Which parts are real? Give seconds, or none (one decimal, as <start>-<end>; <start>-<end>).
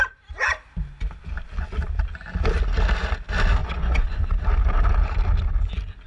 0.0-3.6; 4.4-6.1